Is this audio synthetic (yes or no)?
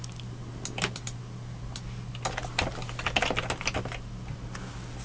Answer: no